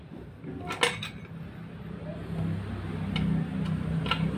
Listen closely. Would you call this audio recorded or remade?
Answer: recorded